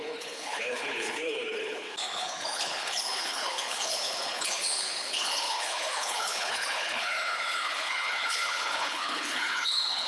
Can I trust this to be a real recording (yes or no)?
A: no